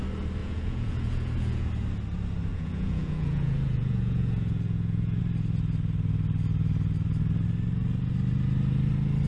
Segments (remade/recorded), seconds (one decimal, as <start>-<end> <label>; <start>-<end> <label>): 0.0-0.4 recorded; 0.4-1.7 remade; 1.7-2.5 recorded; 2.5-5.2 remade; 5.2-9.3 recorded

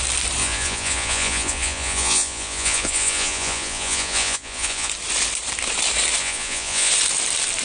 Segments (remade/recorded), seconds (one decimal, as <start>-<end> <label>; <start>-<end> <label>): 0.0-0.4 recorded; 0.4-4.9 remade; 4.9-6.2 recorded; 6.2-6.9 remade; 6.9-7.6 recorded

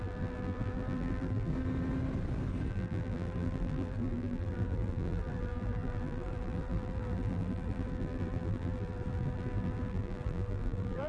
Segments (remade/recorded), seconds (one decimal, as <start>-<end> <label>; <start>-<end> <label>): 0.0-1.5 remade; 1.5-2.7 recorded; 2.7-11.1 remade

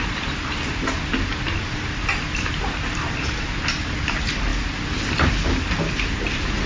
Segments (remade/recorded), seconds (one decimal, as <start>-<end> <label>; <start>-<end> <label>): 0.0-6.7 remade

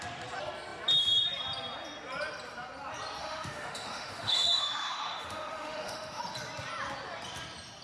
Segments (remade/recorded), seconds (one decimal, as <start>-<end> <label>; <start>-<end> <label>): 0.0-3.2 recorded; 3.2-6.2 remade; 6.2-7.8 recorded